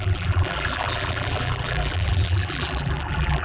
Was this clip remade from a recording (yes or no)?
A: yes